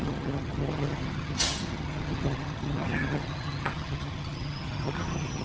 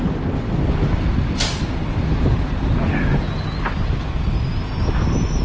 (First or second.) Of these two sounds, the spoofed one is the first